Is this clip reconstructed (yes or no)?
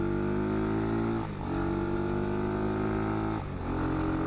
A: no